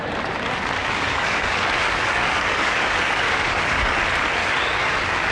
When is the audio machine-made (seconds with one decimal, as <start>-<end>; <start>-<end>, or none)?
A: 0.8-4.0; 4.4-5.3